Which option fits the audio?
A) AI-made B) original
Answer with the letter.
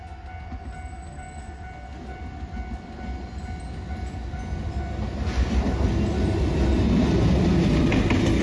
B